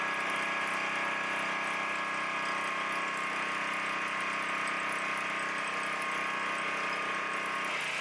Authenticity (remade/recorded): recorded